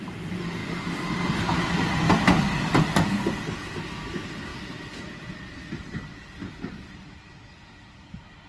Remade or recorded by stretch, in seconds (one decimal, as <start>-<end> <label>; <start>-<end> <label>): 0.0-8.5 recorded